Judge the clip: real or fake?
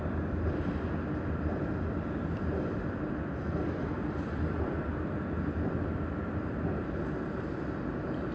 fake